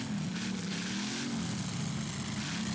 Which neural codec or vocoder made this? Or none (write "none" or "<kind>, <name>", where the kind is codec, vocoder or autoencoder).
none